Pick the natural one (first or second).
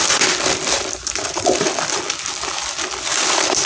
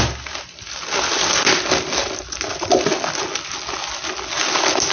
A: second